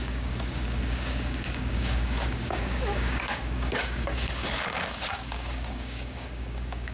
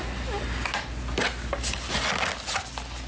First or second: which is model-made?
first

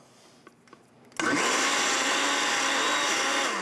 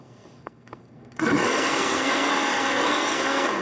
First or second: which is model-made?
second